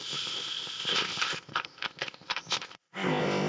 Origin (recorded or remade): remade